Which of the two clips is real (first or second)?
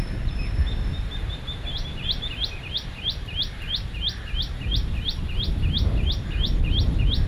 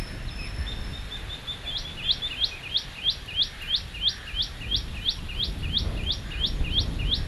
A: second